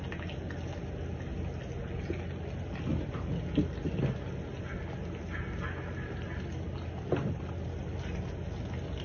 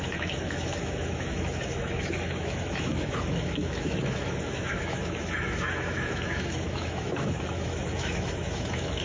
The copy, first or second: second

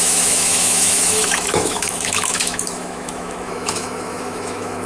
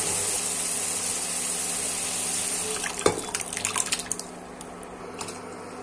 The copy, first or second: first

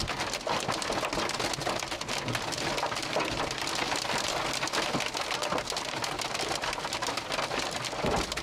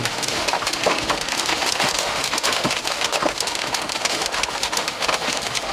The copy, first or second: second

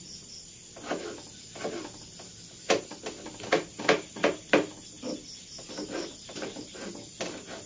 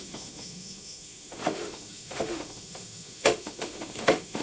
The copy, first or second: second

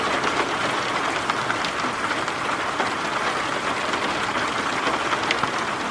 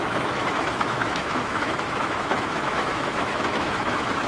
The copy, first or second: second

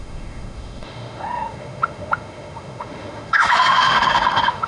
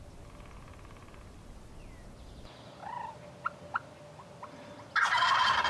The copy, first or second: first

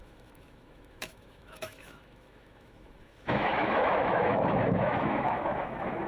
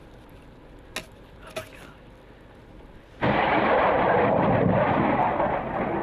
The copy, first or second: first